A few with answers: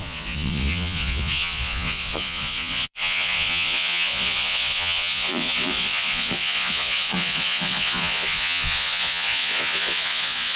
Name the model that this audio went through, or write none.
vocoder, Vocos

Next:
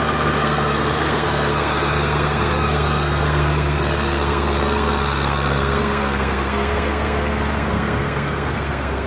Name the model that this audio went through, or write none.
codec, SNAC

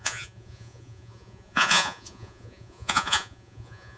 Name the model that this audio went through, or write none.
vocoder, Vocos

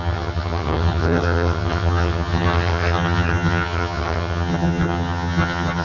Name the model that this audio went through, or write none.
vocoder, HiFi-GAN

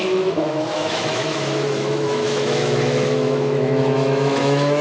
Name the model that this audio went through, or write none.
autoencoder, DAC-VAE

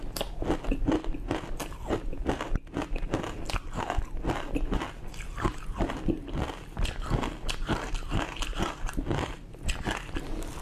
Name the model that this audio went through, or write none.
none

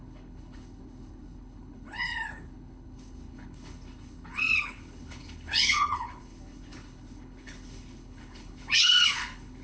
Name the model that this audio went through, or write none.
codec, HILCodec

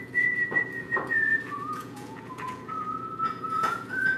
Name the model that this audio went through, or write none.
vocoder, Vocos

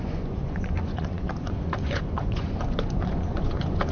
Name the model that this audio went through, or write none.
vocoder, Vocos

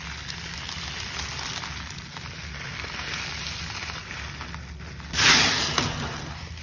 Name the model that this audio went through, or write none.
none